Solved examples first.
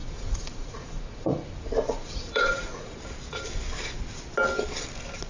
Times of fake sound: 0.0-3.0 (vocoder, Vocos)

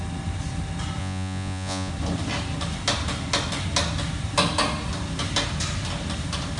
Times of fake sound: 1.0-1.9 (vocoder, Vocos)

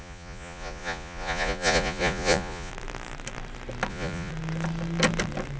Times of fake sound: 0.0-2.7 (vocoder, Vocos); 3.9-4.3

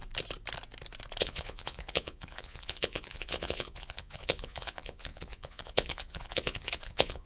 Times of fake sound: 1.2-7.3 (vocoder, Vocos)

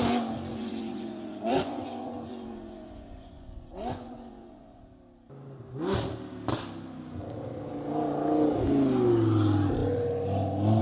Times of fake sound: 0.5-4.8 (vocoder, Vocos)

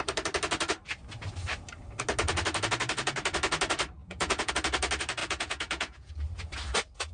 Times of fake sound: 4.0-4.5 (vocoder, Vocos); 5.2-6.1